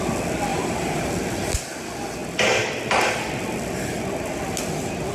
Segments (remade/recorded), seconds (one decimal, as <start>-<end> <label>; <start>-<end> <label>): 0.0-0.5 recorded; 0.5-1.1 remade; 1.1-5.1 recorded

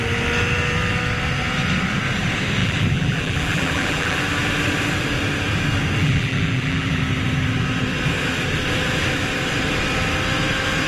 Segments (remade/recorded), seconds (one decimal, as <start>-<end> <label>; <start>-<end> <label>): 0.0-2.6 recorded; 2.6-4.2 remade; 4.2-6.0 recorded; 6.0-7.0 remade; 7.0-10.9 recorded

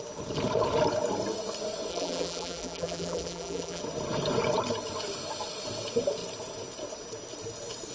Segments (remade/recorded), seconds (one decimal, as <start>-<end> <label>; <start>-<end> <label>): 0.0-1.9 recorded; 1.9-3.8 remade; 3.8-7.9 recorded

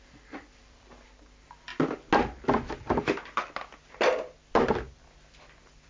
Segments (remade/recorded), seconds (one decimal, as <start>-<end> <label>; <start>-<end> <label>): 0.0-1.7 remade; 1.7-5.2 recorded; 5.2-5.9 remade

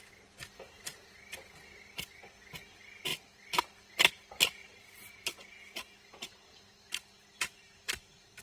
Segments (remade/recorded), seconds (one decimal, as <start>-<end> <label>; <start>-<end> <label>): 0.0-4.6 recorded; 4.6-8.4 remade

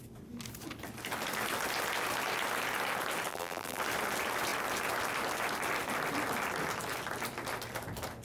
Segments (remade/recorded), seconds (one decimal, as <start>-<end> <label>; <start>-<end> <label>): 0.0-3.3 recorded; 3.3-3.8 remade; 3.8-8.2 recorded

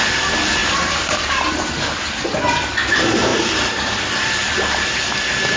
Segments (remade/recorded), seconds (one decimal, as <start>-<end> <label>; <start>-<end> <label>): 0.0-0.6 recorded; 0.6-1.7 remade; 1.7-3.3 recorded; 3.3-5.0 remade; 5.0-5.6 recorded

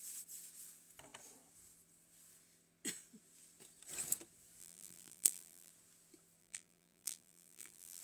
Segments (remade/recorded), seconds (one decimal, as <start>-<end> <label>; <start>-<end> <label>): 0.0-4.6 recorded; 4.6-5.7 remade; 5.7-6.4 recorded; 6.4-8.0 remade